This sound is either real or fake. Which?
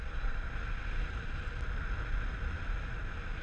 real